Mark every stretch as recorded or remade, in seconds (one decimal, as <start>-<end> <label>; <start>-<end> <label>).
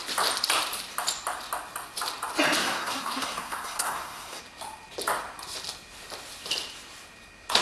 0.0-2.6 recorded; 2.6-4.4 remade; 4.4-7.6 recorded